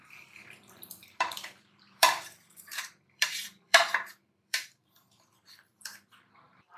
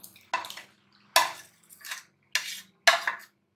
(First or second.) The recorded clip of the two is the second